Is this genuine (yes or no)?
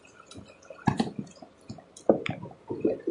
yes